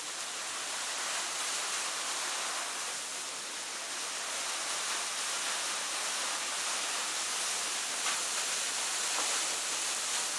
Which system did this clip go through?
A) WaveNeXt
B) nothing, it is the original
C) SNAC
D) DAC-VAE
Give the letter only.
B